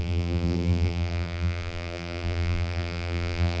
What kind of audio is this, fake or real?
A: fake